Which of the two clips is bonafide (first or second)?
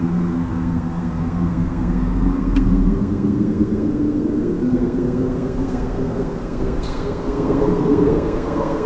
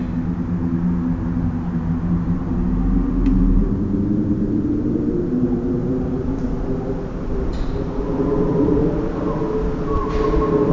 second